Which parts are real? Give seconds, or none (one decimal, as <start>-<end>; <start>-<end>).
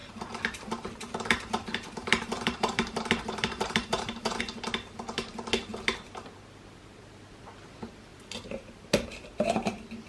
4.4-8.1; 8.8-10.1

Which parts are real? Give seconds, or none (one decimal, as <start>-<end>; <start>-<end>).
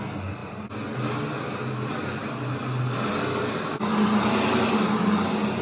0.0-5.6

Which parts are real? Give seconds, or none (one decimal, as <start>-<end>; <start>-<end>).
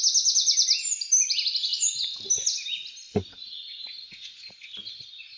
0.0-5.4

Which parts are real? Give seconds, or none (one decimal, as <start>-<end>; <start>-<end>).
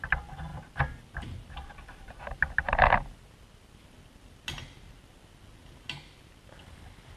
0.0-7.2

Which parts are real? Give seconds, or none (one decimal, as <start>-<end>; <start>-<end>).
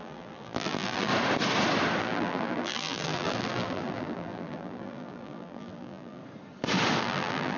1.1-2.0; 6.2-7.0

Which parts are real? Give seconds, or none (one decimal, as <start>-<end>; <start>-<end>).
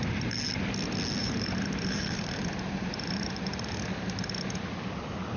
0.0-1.2; 3.5-5.4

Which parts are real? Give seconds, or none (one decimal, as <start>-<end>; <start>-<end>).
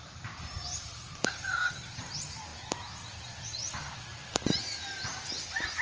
2.5-3.1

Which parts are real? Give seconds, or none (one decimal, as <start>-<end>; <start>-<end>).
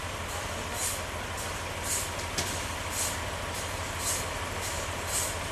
0.8-4.1